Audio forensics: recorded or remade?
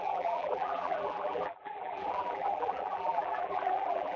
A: remade